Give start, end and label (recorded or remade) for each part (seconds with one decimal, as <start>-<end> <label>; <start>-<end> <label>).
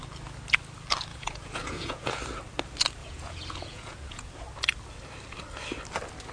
0.0-1.1 recorded; 1.1-2.2 remade; 2.2-3.0 recorded; 3.0-4.3 remade; 4.3-6.3 recorded